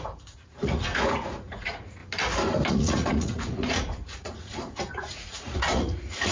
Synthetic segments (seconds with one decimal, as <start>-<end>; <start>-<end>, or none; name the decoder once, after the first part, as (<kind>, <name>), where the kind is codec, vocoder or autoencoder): 0.0-2.0 (vocoder, Vocos); 2.7-6.3

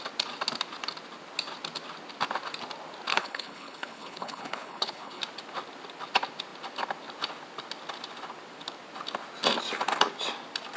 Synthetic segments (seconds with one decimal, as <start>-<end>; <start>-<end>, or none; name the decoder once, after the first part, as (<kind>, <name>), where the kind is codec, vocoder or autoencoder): 3.1-5.2 (codec, HILCodec)

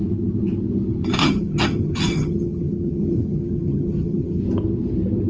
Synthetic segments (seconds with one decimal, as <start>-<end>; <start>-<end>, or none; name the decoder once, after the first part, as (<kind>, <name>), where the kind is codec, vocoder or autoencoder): 1.2-4.4 (vocoder, HiFi-GAN)

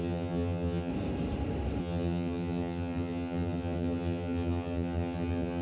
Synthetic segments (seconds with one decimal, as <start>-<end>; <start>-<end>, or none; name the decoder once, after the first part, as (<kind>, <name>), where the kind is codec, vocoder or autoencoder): 0.0-0.9 (vocoder, HiFi-GAN); 1.8-5.6